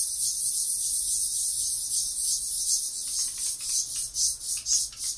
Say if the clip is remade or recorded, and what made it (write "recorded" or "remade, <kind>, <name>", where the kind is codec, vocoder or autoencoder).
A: recorded